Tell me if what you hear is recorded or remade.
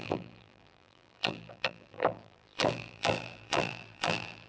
remade